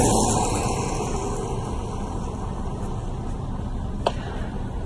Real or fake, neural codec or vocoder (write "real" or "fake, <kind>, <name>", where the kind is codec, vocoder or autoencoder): real